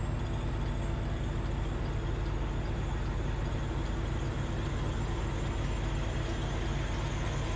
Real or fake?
real